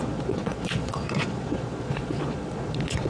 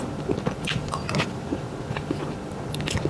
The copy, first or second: first